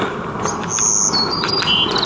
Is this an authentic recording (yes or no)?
yes